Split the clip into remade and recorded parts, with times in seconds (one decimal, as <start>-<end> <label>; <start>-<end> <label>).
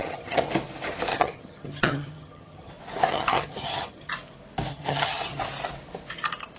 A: 0.0-0.5 remade; 0.5-1.1 recorded; 1.1-2.7 remade; 2.7-3.1 recorded; 3.1-4.1 remade; 4.1-4.7 recorded; 4.7-5.4 remade; 5.4-6.6 recorded